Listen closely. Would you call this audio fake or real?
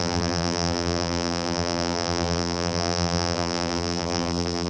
fake